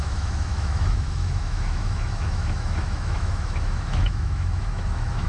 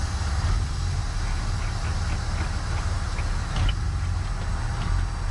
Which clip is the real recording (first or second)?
second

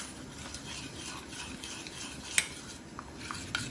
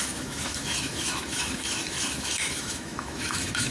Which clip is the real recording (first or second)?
first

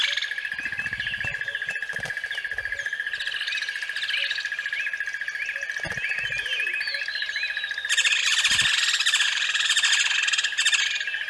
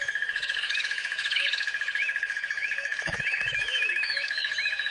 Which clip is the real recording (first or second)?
first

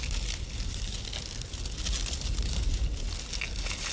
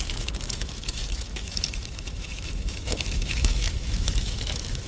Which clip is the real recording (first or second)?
first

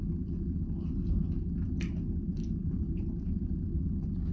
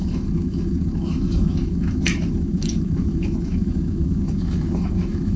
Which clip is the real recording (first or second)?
first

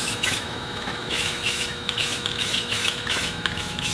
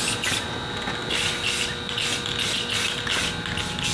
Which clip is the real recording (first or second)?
second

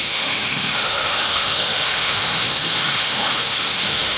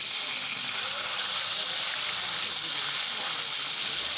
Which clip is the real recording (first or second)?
second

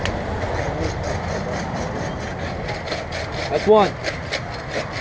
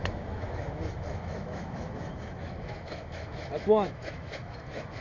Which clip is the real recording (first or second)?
first